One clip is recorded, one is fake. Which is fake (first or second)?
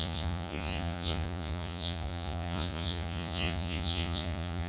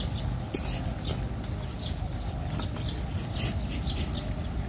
first